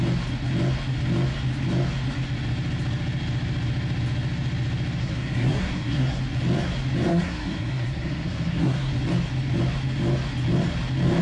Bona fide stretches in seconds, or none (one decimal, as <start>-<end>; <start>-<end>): 0.0-5.0; 6.2-7.1; 8.9-11.2